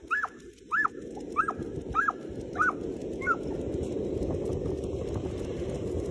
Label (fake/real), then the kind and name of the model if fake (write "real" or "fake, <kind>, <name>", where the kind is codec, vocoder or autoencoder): real